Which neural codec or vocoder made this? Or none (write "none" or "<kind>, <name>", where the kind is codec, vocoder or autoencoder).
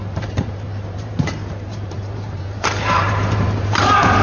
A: vocoder, BigVGAN v2